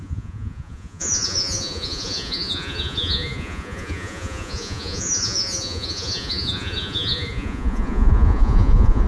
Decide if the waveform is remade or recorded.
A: remade